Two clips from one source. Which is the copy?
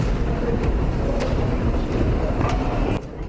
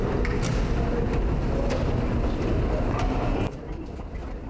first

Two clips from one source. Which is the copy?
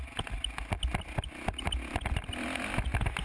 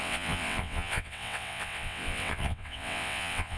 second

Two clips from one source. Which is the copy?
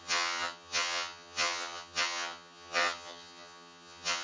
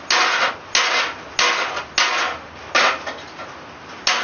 first